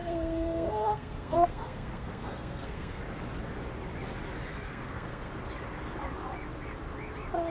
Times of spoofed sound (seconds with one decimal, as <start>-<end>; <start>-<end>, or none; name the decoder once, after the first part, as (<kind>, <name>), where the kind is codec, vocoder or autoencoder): 0.0-3.0 (codec, SNAC); 4.5-5.3

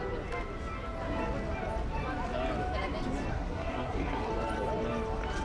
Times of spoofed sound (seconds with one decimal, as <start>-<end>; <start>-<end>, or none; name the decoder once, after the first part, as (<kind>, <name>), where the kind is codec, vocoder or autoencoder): 3.3-4.3 (codec, SNAC)

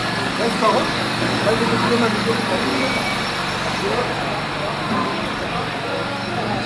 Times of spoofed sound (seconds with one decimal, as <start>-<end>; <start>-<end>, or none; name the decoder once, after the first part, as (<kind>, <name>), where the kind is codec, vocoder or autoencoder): 0.0-2.7 (codec, DAC); 4.9-6.7

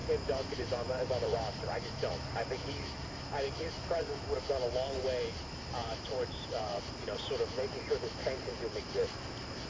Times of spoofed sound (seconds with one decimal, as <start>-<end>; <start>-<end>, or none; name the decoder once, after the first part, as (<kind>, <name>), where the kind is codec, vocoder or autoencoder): 0.0-2.1 (vocoder, BigVGAN v2); 5.8-6.9

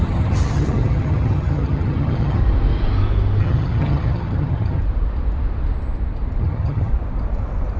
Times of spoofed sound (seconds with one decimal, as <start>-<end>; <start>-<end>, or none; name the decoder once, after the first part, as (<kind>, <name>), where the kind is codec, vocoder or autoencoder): 0.0-2.4 (vocoder, HiFi-GAN); 3.4-4.8; 6.4-6.9

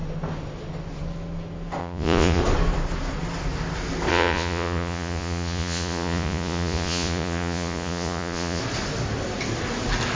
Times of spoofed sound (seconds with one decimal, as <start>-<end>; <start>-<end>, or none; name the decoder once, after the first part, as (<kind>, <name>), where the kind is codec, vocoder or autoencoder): 1.8-2.4 (vocoder, Vocos); 4.1-8.6

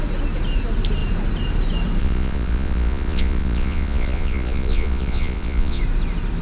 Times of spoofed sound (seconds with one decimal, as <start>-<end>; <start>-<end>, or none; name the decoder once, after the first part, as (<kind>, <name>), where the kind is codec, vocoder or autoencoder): 2.0-5.8 (vocoder, Vocos)

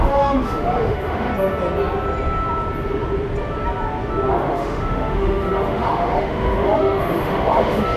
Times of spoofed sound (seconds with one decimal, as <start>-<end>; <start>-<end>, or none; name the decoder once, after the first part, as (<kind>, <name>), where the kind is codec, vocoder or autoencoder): 0.0-1.3 (autoencoder, DAC-VAE); 4.3-8.0